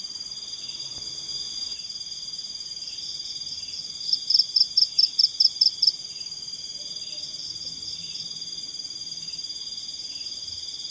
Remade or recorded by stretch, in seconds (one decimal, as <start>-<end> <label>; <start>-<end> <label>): 0.0-0.9 remade; 0.9-5.1 recorded; 5.1-9.5 remade; 9.5-10.5 recorded; 10.5-10.9 remade